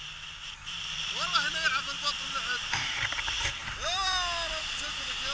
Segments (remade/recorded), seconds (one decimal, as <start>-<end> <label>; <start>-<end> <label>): 0.0-5.3 recorded